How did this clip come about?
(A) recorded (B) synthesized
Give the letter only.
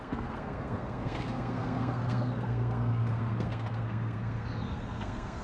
B